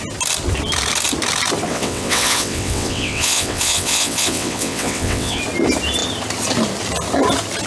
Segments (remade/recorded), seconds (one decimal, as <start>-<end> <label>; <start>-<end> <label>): 0.0-1.7 recorded; 1.7-5.4 remade; 5.4-7.7 recorded